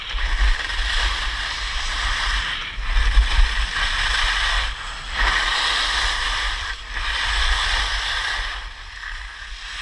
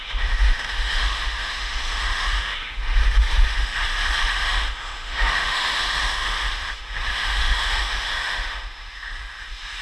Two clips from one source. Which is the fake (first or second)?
second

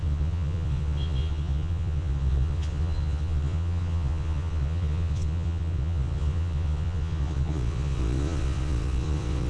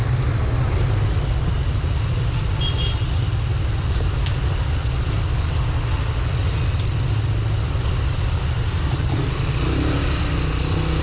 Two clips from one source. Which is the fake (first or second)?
first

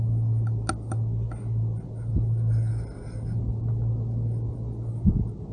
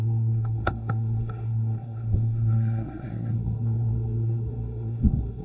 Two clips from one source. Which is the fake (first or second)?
second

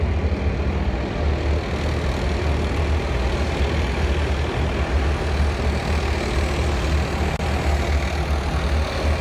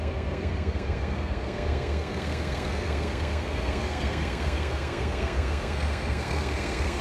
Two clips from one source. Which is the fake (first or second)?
second